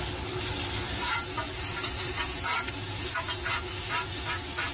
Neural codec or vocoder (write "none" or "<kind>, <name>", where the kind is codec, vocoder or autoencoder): none